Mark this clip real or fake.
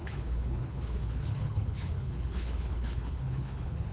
fake